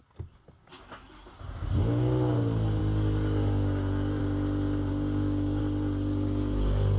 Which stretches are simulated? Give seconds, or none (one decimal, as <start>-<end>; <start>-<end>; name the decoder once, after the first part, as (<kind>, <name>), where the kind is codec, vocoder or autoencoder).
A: 2.8-4.2 (codec, DAC); 4.9-5.6